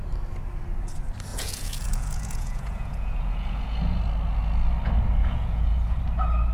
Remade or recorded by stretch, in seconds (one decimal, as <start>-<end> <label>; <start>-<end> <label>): 0.0-1.3 recorded; 1.3-4.0 remade; 4.0-5.2 recorded; 5.2-6.0 remade; 6.0-6.5 recorded

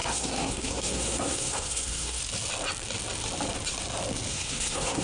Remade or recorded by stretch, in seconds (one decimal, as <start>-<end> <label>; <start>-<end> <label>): 0.0-2.2 remade; 2.2-4.3 recorded; 4.3-5.0 remade